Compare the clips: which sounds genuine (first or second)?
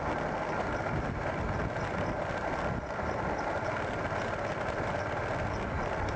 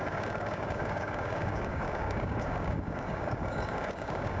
first